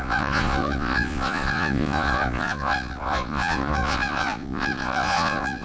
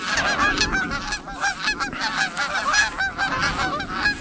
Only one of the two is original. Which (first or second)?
second